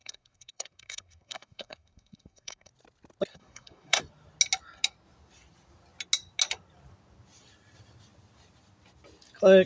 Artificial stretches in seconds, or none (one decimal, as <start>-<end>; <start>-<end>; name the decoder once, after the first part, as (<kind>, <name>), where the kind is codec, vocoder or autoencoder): 0.0-2.7 (codec, SNAC); 3.3-4.0